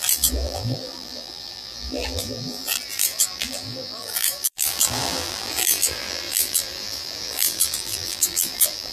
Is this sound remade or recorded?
remade